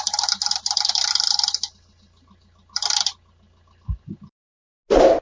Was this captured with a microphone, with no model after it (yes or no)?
yes